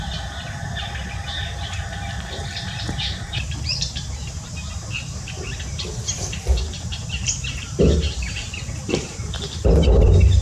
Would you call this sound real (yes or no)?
no